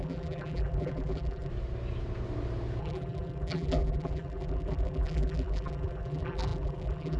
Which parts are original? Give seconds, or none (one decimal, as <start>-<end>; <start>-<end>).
1.5-2.8